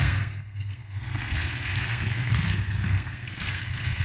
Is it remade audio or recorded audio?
remade